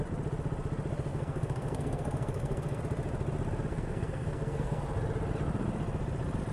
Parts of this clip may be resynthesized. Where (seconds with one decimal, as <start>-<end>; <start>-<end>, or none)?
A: 1.1-2.8; 3.7-4.8